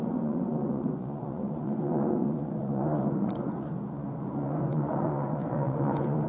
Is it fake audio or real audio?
fake